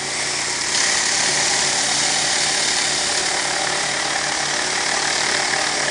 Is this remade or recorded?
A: recorded